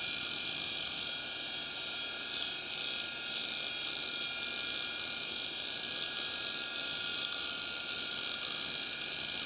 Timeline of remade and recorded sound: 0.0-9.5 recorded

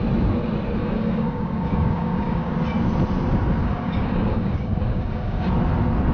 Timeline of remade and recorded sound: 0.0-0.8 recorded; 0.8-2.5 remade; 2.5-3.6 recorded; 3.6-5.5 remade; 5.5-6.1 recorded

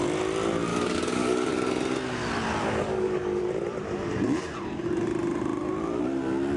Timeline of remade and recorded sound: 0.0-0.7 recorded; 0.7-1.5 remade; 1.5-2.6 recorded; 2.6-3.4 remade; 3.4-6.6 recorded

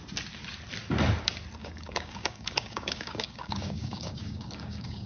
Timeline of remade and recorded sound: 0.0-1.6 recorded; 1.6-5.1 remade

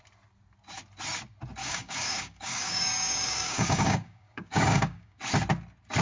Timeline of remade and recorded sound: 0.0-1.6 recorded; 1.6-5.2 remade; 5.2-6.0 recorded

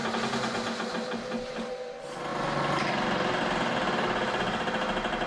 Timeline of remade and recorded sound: 0.0-5.3 recorded

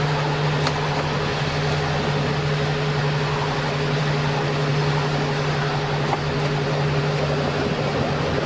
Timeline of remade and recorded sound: 0.0-8.5 recorded

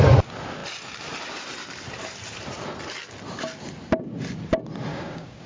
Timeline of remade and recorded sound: 0.0-4.9 recorded; 4.9-5.5 remade